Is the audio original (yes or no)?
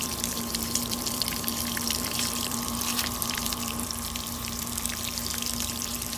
no